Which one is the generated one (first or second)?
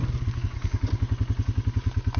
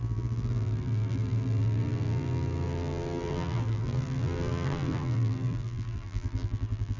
second